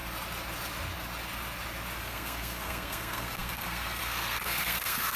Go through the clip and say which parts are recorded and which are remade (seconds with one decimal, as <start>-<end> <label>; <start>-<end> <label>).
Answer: 0.0-2.0 recorded; 2.0-5.2 remade